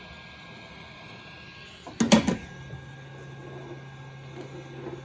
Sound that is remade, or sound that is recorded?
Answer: recorded